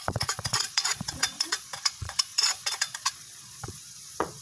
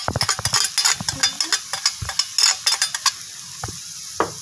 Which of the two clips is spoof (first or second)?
first